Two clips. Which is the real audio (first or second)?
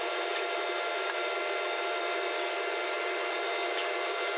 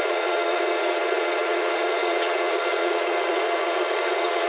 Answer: first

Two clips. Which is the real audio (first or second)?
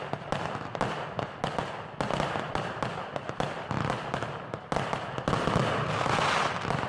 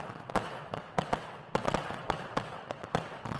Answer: first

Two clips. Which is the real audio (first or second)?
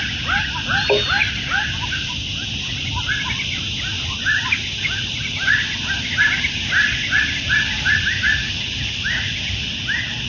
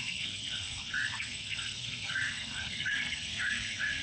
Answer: first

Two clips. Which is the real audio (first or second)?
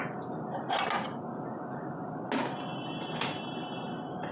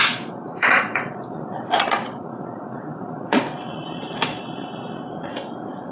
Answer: first